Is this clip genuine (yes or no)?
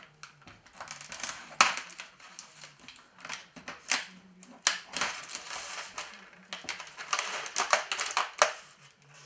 yes